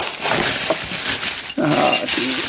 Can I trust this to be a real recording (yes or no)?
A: yes